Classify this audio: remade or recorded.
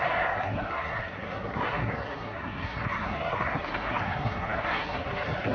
remade